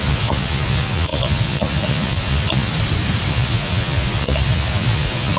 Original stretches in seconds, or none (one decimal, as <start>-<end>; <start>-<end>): 2.7-3.3